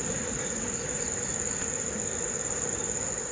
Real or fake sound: real